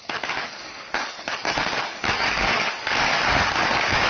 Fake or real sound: fake